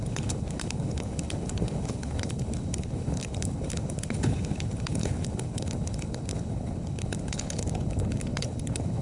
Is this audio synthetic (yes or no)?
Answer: yes